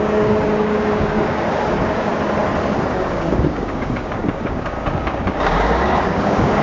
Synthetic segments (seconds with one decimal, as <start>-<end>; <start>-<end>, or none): 0.0-2.1; 2.9-6.6